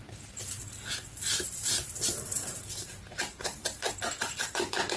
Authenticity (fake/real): fake